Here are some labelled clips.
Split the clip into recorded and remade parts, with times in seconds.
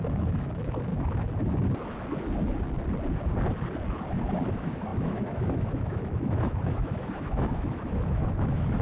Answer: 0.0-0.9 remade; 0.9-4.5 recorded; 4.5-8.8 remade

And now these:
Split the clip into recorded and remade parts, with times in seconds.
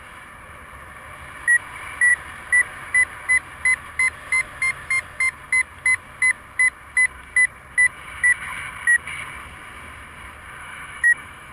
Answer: 0.0-10.6 recorded; 10.6-11.5 remade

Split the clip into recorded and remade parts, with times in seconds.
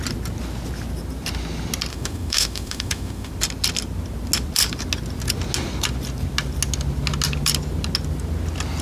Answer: 0.0-1.9 recorded; 1.9-3.3 remade; 3.3-8.8 recorded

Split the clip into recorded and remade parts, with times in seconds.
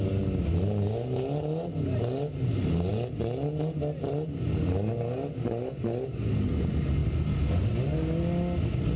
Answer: 0.0-9.0 recorded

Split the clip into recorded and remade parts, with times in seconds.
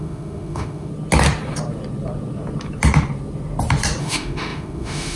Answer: 0.0-0.9 remade; 0.9-4.0 recorded; 4.0-5.2 remade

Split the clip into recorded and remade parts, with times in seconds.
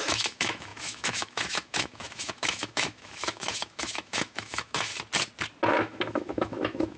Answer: 0.0-4.9 remade; 4.9-5.7 recorded; 5.7-7.0 remade